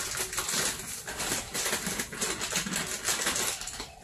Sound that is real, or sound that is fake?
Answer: real